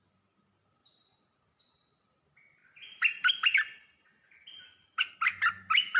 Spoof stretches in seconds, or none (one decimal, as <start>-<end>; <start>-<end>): none